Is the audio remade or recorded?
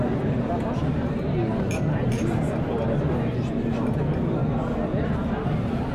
recorded